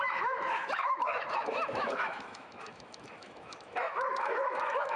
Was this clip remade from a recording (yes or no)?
yes